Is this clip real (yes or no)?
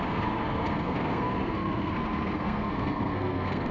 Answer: no